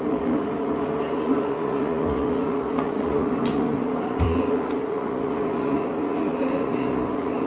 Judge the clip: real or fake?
fake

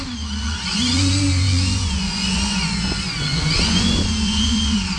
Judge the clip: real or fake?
fake